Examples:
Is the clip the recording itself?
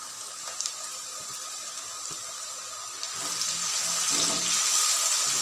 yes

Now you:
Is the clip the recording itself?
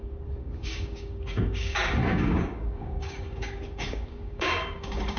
no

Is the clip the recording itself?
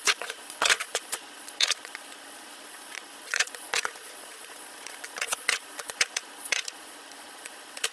no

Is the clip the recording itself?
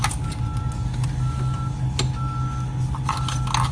yes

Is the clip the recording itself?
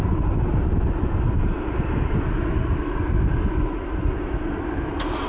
yes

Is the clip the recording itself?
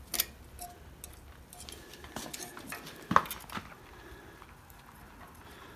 yes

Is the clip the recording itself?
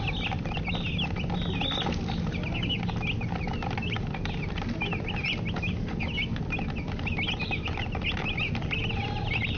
yes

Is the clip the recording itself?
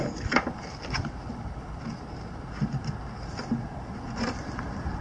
yes